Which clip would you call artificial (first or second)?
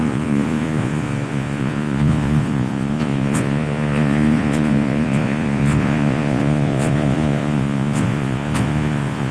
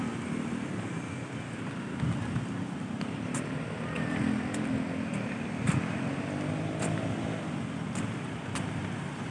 first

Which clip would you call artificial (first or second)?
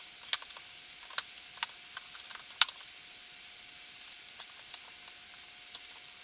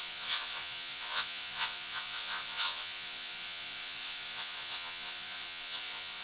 second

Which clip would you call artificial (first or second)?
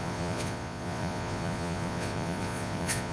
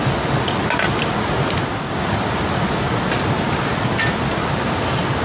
first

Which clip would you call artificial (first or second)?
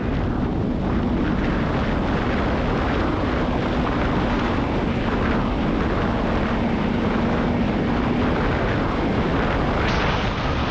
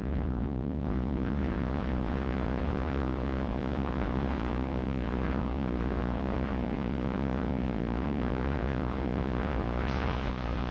second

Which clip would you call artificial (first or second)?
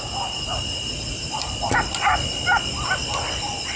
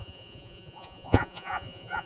second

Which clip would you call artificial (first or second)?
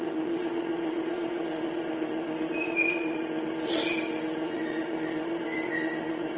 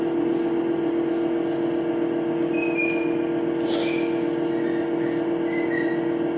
first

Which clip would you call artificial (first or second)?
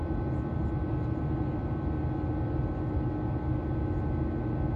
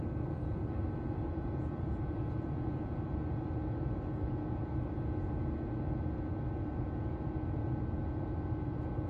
second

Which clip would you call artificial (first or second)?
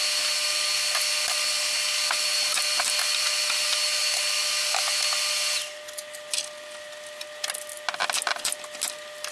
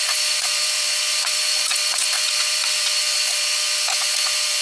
second